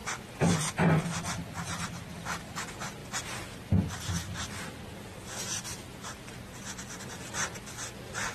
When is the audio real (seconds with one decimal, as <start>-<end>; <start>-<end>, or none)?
2.0-3.0; 3.9-5.7; 7.0-8.3